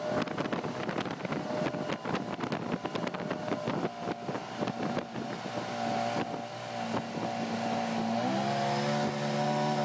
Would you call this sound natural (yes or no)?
yes